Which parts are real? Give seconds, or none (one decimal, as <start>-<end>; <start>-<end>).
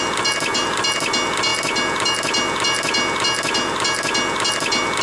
0.0-5.0